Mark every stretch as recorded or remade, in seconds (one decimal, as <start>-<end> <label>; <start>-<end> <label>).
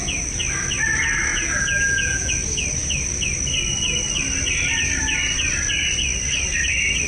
0.0-1.3 recorded; 1.3-2.3 remade; 2.3-7.1 recorded